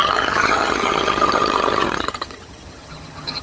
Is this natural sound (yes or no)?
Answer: no